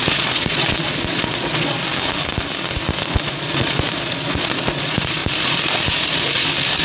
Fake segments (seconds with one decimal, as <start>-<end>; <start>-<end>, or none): 0.0-1.8; 3.0-5.2